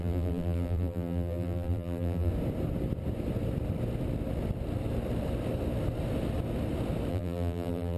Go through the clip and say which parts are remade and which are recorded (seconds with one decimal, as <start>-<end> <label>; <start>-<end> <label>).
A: 0.0-2.3 remade; 2.3-7.1 recorded; 7.1-8.0 remade

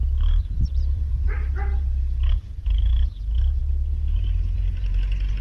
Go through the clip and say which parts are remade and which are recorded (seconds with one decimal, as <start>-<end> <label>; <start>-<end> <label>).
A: 0.0-3.2 remade; 3.2-3.6 recorded; 3.6-4.9 remade; 4.9-5.4 recorded